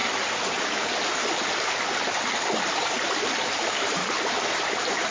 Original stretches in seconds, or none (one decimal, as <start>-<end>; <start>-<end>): 0.0-5.1